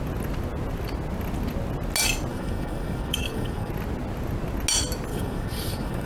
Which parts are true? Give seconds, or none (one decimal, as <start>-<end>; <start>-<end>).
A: 0.0-2.3; 3.7-5.1